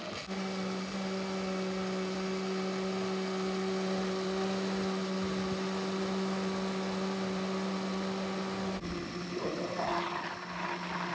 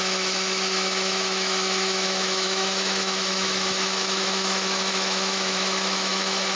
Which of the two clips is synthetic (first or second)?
second